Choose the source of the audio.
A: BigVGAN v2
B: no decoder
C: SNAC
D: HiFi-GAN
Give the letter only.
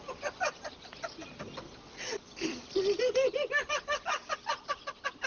B